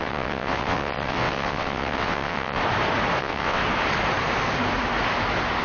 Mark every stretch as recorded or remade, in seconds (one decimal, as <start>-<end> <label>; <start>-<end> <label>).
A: 0.0-2.6 remade; 2.6-3.2 recorded; 3.2-3.6 remade; 3.6-5.6 recorded